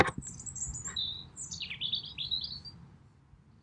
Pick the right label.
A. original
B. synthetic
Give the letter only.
A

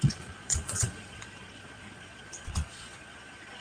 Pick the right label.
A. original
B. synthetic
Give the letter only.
B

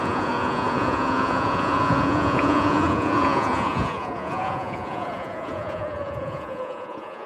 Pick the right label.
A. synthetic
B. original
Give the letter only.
A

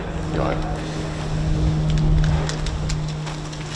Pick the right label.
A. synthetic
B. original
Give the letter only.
B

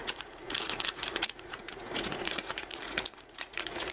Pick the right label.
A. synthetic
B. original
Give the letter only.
A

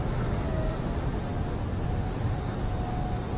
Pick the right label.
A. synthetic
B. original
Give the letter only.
B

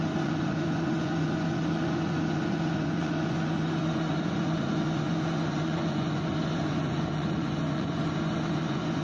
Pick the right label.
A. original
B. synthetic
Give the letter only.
B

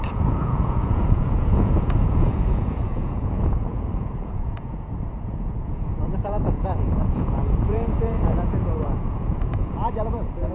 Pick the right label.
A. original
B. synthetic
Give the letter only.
B